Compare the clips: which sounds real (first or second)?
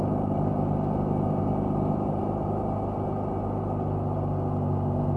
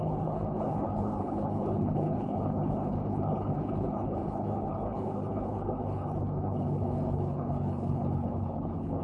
first